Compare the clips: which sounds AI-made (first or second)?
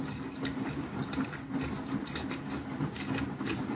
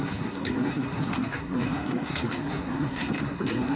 second